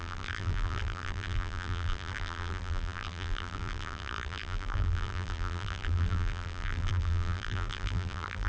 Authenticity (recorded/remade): remade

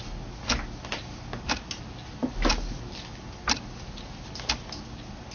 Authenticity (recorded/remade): recorded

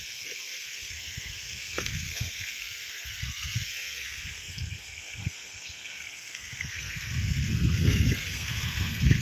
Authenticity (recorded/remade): remade